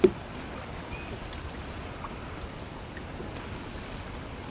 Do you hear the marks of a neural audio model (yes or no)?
no